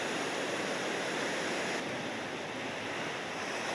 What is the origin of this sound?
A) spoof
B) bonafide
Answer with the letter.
B